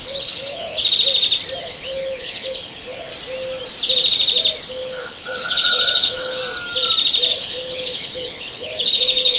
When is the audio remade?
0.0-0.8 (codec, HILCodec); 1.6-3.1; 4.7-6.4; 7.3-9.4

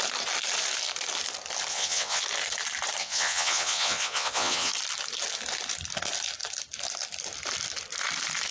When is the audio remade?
1.7-2.2 (vocoder, WaveNeXt); 3.0-4.7

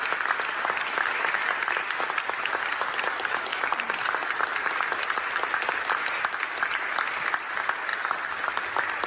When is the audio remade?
3.5-4.1 (vocoder, BigVGAN v2)

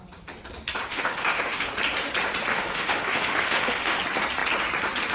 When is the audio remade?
0.9-1.7 (autoencoder, DAC-VAE); 2.5-4.0

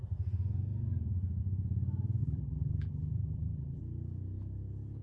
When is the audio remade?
2.2-3.8 (vocoder, BigVGAN v2)

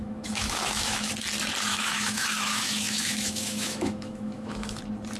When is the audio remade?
0.0-1.1 (autoencoder, DAC-VAE); 1.7-4.8

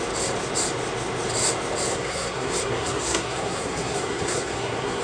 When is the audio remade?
1.9-5.0 (codec, SNAC)